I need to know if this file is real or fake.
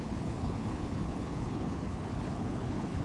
fake